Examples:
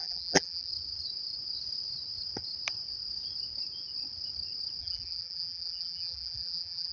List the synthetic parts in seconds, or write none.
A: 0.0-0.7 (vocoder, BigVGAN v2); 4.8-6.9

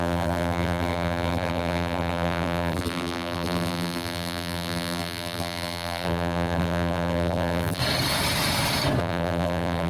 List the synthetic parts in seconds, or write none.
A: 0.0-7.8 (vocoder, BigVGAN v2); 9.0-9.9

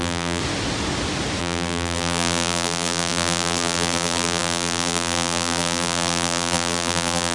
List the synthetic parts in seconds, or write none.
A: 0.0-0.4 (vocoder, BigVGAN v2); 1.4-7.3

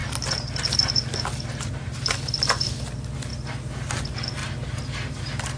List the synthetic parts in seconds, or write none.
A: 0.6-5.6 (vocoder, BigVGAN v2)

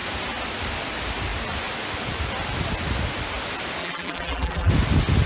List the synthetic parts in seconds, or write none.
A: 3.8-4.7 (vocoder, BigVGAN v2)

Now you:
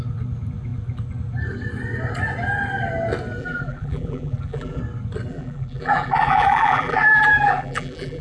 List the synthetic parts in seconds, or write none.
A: 3.4-4.8 (vocoder, BigVGAN v2); 5.3-8.2

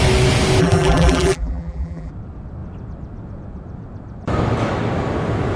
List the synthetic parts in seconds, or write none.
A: 0.6-2.1 (vocoder, BigVGAN v2)

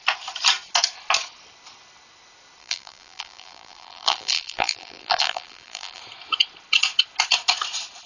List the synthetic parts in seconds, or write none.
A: 2.6-6.0 (vocoder, BigVGAN v2)